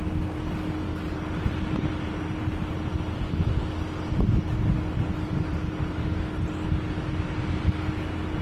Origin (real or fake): real